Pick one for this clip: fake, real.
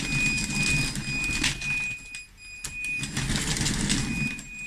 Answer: real